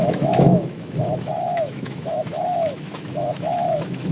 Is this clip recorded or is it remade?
remade